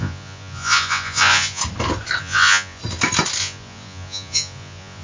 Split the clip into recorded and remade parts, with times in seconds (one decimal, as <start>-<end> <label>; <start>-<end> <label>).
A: 0.0-1.6 remade; 1.6-2.2 recorded; 2.2-2.8 remade; 2.8-3.4 recorded; 3.4-5.0 remade